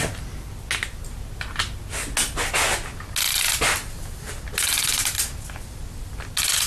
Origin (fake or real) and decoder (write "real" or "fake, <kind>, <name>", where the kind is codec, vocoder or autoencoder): real